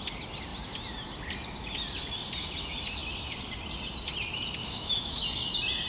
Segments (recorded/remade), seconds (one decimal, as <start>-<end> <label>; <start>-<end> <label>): 0.0-4.6 recorded; 4.6-5.2 remade; 5.2-5.9 recorded